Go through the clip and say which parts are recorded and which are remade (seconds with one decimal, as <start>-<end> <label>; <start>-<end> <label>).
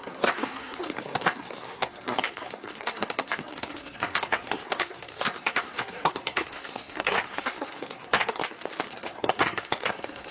0.0-8.4 remade; 8.4-8.9 recorded; 8.9-10.3 remade